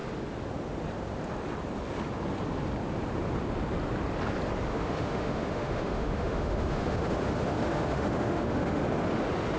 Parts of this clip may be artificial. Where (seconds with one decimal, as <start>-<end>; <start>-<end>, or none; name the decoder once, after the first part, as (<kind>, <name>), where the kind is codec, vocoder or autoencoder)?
4.7-8.8 (autoencoder, DAC-VAE)